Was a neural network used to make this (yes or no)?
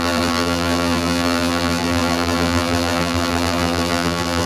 yes